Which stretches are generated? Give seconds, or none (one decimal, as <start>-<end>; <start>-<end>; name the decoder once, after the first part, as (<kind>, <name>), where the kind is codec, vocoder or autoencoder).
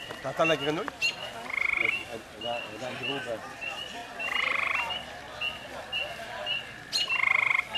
2.1-3.0 (vocoder, BigVGAN v2)